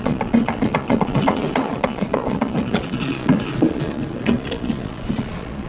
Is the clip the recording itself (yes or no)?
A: no